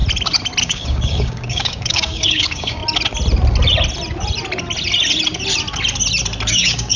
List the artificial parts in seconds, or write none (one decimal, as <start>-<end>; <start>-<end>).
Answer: 0.6-2.8; 6.5-7.0